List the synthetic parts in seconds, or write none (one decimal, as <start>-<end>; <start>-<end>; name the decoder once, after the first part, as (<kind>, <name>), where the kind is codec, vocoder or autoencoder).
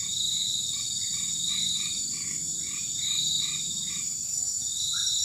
0.0-0.4 (vocoder, BigVGAN v2); 1.5-5.2